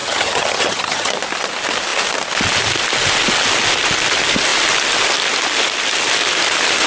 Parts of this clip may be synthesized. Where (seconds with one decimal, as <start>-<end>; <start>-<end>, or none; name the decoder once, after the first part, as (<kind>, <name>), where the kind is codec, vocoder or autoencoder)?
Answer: 0.0-1.1 (vocoder, HiFi-GAN)